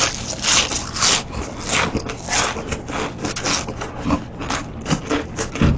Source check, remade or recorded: recorded